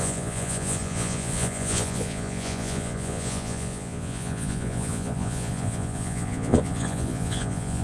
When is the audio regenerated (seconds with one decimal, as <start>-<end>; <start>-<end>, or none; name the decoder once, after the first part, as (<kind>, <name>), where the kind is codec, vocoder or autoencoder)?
0.0-7.8 (vocoder, Vocos)